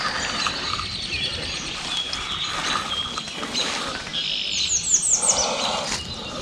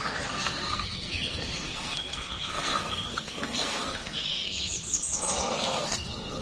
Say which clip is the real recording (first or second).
first